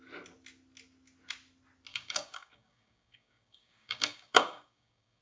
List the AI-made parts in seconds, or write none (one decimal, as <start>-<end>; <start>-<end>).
1.9-5.2